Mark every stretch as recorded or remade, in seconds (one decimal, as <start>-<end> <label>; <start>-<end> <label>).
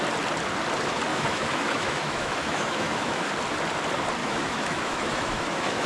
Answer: 0.0-1.1 recorded; 1.1-3.3 remade; 3.3-4.2 recorded; 4.2-5.9 remade